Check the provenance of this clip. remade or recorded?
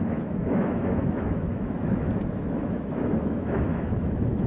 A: remade